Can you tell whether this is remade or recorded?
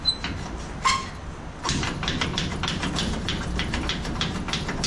recorded